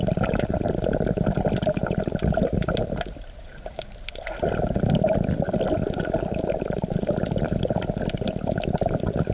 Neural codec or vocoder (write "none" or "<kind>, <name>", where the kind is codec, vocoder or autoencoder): none